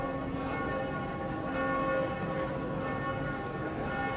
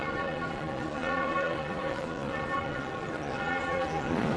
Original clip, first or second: first